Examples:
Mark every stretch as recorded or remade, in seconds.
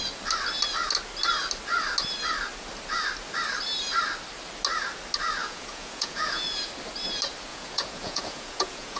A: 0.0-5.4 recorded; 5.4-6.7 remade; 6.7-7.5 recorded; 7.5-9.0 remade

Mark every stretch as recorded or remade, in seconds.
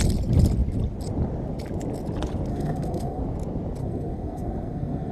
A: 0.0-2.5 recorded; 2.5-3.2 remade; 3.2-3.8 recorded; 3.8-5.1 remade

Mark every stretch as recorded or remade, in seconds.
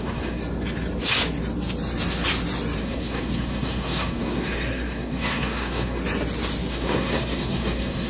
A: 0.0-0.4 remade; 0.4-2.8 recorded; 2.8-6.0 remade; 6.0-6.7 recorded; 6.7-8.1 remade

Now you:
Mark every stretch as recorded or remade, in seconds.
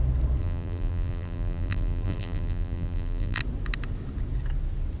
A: 0.0-0.4 recorded; 0.4-3.4 remade; 3.4-5.0 recorded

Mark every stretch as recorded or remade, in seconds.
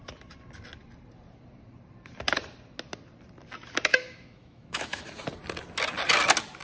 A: 0.0-3.9 recorded; 3.9-5.0 remade; 5.0-6.6 recorded